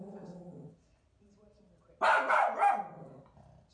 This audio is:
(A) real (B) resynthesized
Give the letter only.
A